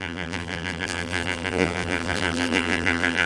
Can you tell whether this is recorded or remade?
remade